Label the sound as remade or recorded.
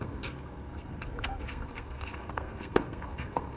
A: remade